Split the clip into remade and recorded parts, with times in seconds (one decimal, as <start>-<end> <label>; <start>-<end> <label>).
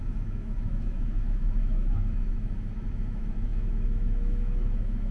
0.0-5.1 remade